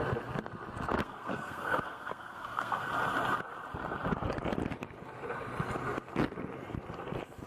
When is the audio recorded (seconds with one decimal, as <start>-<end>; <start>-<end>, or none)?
0.0-1.0; 2.9-7.5